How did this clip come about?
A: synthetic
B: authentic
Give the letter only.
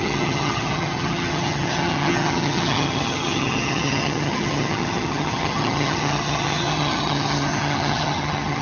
A